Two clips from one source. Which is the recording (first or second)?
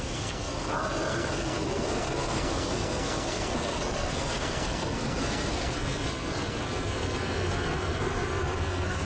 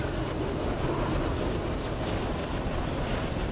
second